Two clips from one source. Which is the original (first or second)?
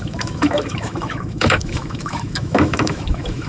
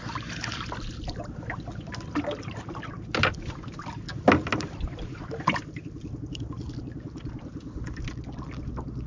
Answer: second